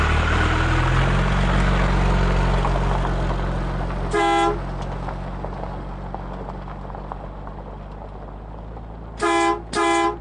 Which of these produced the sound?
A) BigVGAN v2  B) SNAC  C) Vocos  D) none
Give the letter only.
D